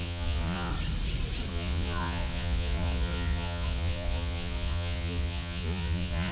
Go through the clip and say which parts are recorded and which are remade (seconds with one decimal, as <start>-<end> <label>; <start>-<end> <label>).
0.0-0.7 remade; 0.7-1.5 recorded; 1.5-6.3 remade